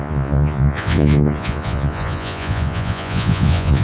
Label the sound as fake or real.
fake